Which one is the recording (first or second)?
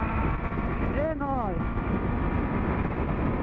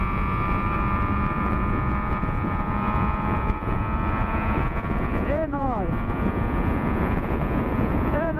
first